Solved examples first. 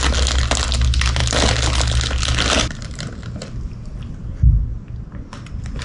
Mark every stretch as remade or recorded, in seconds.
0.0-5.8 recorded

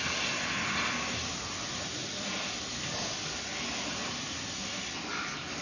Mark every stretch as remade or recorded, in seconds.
0.0-5.6 recorded